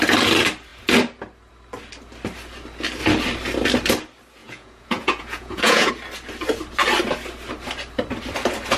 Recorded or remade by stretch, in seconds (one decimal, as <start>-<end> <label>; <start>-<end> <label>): 0.0-4.4 recorded; 4.4-5.9 remade; 5.9-8.8 recorded

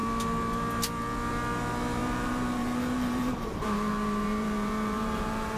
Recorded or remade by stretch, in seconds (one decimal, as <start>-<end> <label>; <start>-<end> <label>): 0.0-2.0 recorded; 2.0-5.6 remade

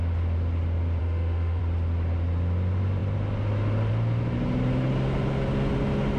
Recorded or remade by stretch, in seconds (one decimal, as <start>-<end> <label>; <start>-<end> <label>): 0.0-1.0 recorded; 1.0-1.6 remade; 1.6-6.2 recorded

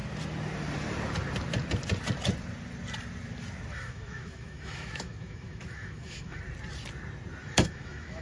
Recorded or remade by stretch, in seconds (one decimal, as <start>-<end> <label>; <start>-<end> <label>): 0.0-3.7 recorded; 3.7-6.4 remade; 6.4-7.4 recorded; 7.4-8.2 remade

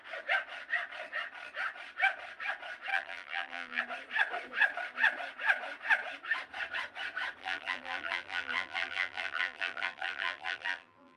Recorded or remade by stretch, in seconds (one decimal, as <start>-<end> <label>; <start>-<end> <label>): 0.0-2.9 recorded; 2.9-3.8 remade; 3.8-7.4 recorded; 7.4-11.2 remade

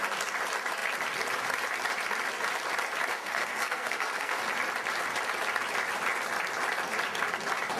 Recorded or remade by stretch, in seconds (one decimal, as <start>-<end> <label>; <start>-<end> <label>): 0.0-3.1 recorded; 3.1-4.4 remade; 4.4-7.8 recorded

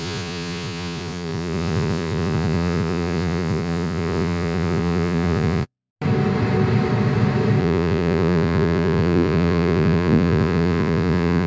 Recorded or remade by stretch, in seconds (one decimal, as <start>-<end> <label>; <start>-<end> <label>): 0.0-5.9 remade; 5.9-7.6 recorded; 7.6-11.5 remade